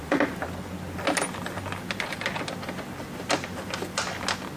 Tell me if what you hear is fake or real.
real